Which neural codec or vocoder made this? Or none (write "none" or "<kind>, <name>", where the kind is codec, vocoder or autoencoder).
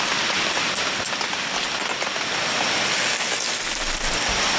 none